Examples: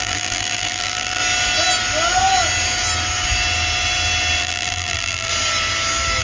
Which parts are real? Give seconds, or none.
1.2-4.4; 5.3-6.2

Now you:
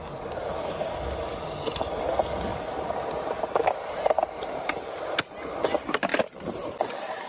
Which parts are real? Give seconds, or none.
0.0-2.5; 4.9-6.1; 6.7-7.3

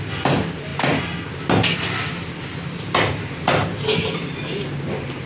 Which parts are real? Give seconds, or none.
0.0-5.3

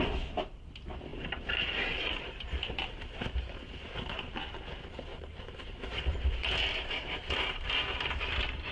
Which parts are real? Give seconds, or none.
0.0-1.1; 4.4-5.1

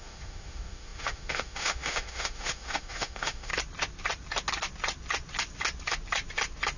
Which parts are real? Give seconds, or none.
3.5-6.8